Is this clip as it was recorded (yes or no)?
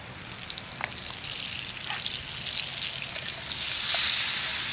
yes